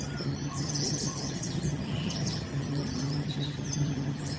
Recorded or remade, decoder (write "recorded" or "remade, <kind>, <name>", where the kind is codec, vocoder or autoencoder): remade, vocoder, HiFi-GAN